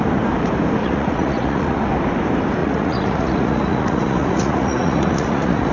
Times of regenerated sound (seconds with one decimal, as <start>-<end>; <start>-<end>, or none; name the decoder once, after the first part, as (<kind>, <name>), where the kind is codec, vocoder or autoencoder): 0.8-1.8 (vocoder, Vocos); 2.6-5.7